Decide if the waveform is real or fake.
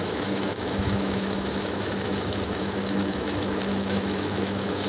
fake